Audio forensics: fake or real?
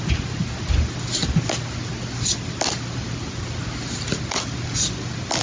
real